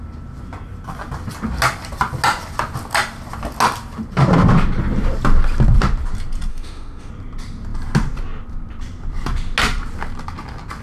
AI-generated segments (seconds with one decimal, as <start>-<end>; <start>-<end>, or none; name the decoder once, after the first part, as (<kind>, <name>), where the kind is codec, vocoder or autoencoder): 6.5-7.1 (autoencoder, DAC-VAE)